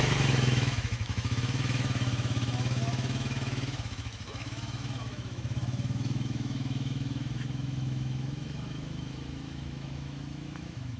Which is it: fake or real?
fake